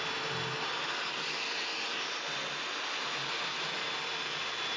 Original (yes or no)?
yes